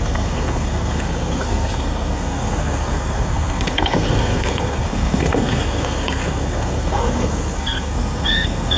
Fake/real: fake